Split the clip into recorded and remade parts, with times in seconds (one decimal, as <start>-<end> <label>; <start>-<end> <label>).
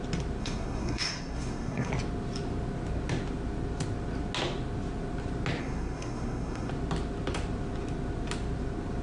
0.0-0.4 recorded; 0.4-1.9 remade; 1.9-5.6 recorded; 5.6-6.7 remade; 6.7-9.0 recorded